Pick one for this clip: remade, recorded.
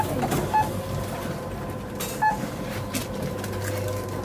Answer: recorded